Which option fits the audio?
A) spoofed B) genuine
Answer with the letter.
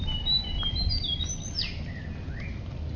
B